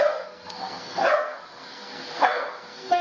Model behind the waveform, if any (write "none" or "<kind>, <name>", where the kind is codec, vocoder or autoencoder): codec, SNAC